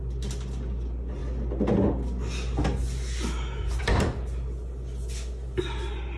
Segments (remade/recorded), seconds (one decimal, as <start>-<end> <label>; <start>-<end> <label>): 0.0-6.2 recorded